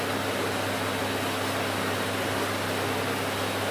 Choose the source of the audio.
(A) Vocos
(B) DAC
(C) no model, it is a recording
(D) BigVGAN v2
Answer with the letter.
C